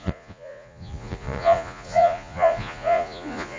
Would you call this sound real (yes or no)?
no